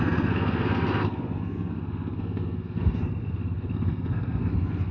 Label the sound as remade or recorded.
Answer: remade